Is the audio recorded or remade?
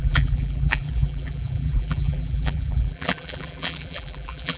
remade